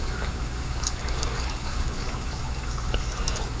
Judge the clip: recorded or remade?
remade